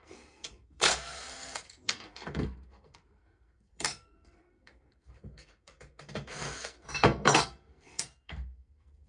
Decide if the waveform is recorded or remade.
remade